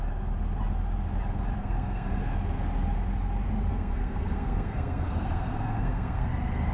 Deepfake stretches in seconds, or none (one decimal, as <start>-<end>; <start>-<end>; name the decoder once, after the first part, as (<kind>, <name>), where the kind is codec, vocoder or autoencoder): 1.6-2.2 (codec, SNAC); 3.7-6.3